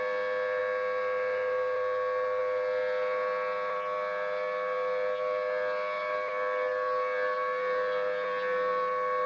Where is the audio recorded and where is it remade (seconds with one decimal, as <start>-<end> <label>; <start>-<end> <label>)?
0.0-9.3 recorded